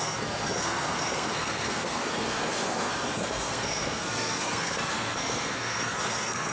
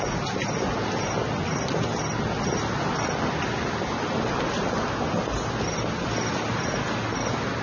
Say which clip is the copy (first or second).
first